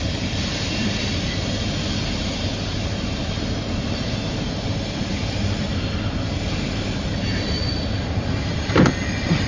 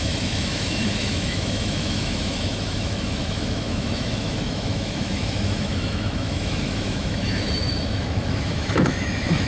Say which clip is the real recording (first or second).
first